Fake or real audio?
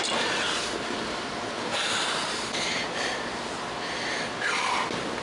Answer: real